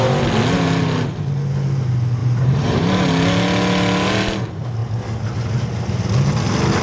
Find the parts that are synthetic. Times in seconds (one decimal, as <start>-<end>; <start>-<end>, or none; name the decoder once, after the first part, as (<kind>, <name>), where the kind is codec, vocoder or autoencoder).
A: 2.2-3.1 (vocoder, BigVGAN v2)